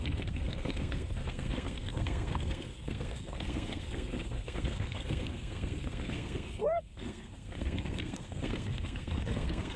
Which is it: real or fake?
fake